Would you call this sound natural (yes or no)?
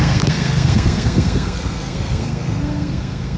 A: no